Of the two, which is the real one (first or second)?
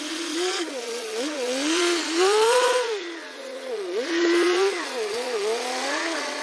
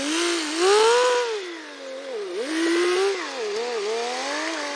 second